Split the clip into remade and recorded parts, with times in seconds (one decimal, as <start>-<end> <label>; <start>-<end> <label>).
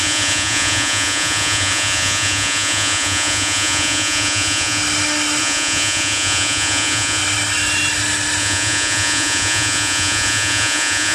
0.0-4.8 remade; 4.8-5.4 recorded; 5.4-7.2 remade; 7.2-8.4 recorded; 8.4-11.1 remade